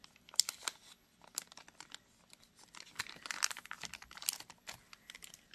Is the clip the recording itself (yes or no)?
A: yes